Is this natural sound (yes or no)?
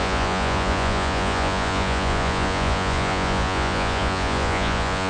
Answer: no